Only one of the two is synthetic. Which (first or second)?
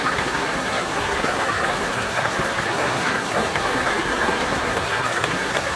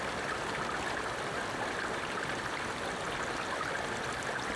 first